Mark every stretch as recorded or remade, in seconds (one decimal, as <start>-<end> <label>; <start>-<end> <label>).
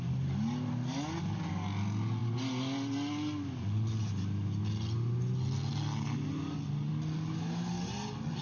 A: 0.0-8.4 recorded